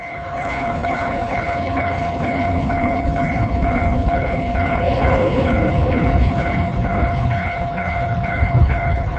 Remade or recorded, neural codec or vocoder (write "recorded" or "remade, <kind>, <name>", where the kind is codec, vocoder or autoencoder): remade, codec, HILCodec